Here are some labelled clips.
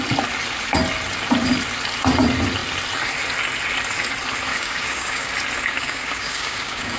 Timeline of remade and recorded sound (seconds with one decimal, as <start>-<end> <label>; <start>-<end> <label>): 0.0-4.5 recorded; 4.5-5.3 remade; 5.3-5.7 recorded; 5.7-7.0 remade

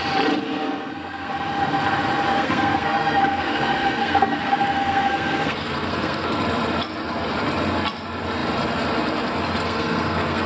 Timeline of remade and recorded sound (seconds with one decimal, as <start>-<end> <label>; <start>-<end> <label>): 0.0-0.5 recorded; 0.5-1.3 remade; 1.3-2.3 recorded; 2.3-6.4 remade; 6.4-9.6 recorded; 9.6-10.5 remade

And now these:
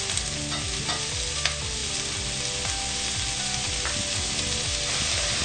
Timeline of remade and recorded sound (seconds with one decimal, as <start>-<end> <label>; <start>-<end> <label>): 0.0-5.4 recorded

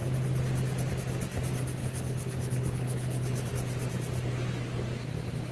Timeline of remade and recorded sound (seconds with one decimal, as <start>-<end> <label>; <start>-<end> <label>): 0.0-1.8 recorded; 1.8-3.5 remade; 3.5-5.5 recorded